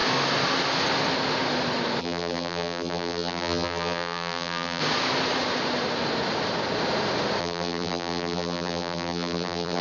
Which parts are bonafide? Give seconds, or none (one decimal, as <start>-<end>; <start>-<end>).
0.0-2.0; 4.8-7.4